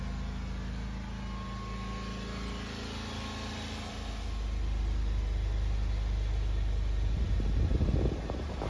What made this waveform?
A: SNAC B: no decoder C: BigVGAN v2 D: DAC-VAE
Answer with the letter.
B